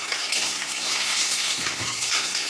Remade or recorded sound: remade